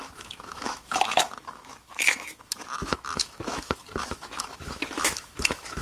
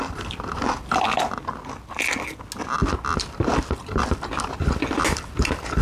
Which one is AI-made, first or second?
first